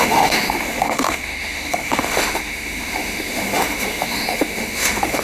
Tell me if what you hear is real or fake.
fake